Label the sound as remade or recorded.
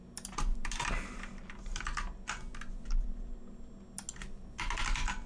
recorded